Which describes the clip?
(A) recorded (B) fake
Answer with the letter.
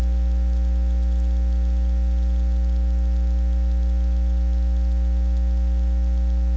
A